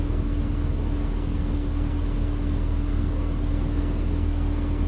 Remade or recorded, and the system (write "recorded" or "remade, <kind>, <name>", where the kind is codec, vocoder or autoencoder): remade, codec, SNAC